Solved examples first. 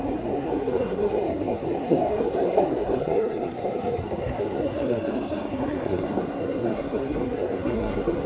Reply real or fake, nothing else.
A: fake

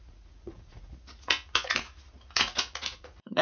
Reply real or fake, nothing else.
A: fake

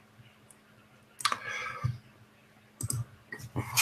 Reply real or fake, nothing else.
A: real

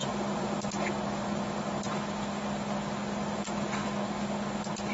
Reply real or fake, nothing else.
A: real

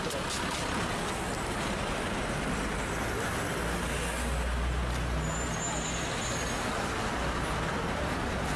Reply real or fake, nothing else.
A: real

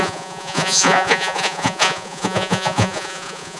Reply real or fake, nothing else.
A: fake